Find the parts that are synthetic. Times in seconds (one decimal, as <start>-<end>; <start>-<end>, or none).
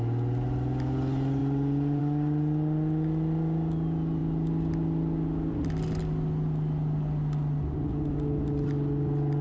none